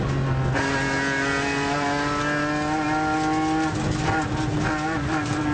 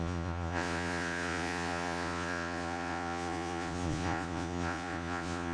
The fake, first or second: second